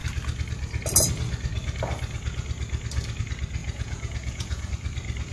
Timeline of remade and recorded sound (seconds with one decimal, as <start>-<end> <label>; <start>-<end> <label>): 0.0-3.6 recorded; 3.6-4.7 remade; 4.7-5.3 recorded